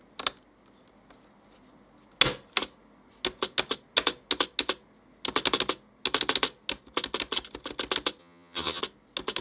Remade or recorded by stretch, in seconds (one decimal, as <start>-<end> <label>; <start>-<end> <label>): 0.0-8.2 recorded; 8.2-8.8 remade; 8.8-9.4 recorded

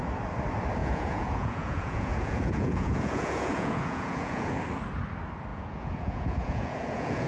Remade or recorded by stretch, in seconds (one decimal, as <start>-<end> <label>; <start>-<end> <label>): 0.0-0.8 recorded; 0.8-4.6 remade; 4.6-5.5 recorded; 5.5-7.3 remade